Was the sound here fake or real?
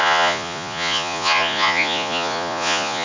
fake